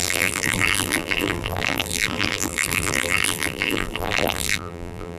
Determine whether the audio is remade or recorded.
remade